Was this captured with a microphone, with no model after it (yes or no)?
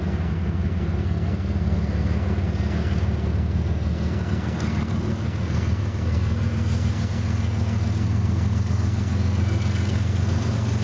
no